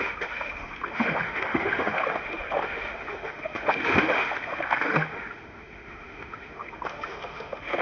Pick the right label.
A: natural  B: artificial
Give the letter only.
B